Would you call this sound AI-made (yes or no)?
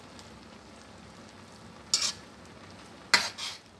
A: no